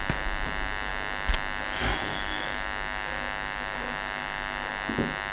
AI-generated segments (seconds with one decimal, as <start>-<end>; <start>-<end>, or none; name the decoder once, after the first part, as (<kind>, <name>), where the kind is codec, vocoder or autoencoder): 2.1-4.7 (autoencoder, DAC-VAE)